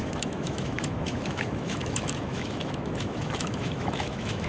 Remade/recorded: remade